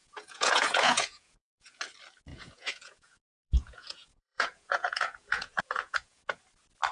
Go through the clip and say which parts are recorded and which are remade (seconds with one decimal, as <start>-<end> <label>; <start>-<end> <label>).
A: 0.0-1.8 remade; 1.8-2.3 recorded; 2.3-6.4 remade; 6.4-6.9 recorded